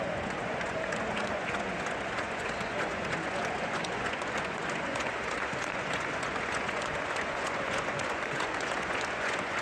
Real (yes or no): no